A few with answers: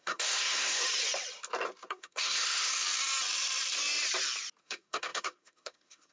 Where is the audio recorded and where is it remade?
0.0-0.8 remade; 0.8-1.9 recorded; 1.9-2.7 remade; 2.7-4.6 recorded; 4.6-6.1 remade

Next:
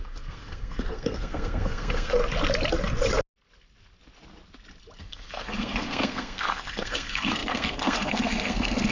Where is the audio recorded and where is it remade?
0.0-2.2 remade; 2.2-5.0 recorded; 5.0-8.9 remade

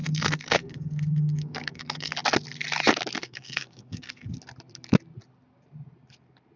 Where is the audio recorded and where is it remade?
0.0-2.1 remade; 2.1-3.2 recorded; 3.2-4.3 remade; 4.3-6.6 recorded

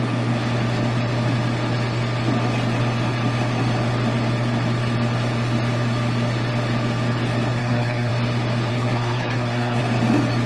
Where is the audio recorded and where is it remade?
0.0-7.6 recorded; 7.6-8.1 remade; 8.1-8.7 recorded; 8.7-9.8 remade; 9.8-10.5 recorded